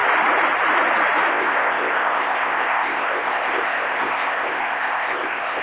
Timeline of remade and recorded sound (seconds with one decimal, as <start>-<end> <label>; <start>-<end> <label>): 0.0-1.3 recorded; 1.3-5.6 remade